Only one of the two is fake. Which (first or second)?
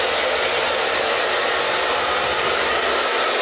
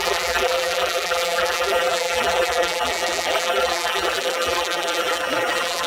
second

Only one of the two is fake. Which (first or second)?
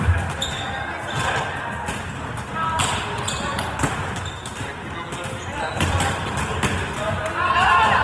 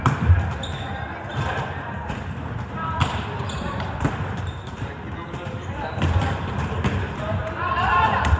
second